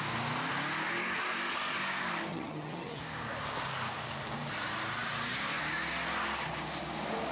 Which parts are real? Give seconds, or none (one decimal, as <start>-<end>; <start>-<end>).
0.0-2.3; 3.0-7.3